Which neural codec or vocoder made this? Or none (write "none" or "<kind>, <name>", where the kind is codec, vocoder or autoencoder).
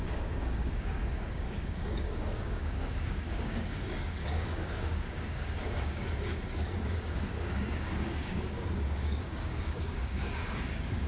codec, DAC